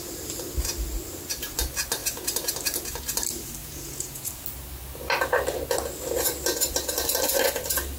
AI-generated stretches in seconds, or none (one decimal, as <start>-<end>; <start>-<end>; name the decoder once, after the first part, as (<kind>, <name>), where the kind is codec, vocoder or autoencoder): 3.6-4.3 (vocoder, Vocos)